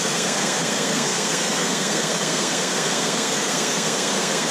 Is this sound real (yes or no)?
no